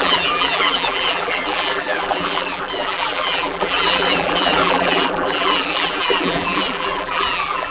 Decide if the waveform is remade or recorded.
remade